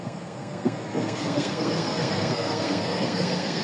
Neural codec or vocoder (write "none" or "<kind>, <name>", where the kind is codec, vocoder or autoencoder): codec, SNAC